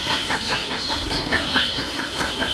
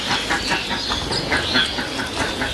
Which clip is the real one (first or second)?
second